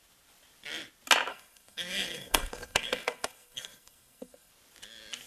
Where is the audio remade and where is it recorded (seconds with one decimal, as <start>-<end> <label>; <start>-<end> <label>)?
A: 0.0-1.3 recorded; 1.3-4.5 remade; 4.5-5.3 recorded